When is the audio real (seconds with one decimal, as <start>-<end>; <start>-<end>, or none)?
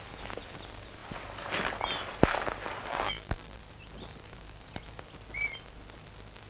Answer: 0.0-2.9; 3.6-6.5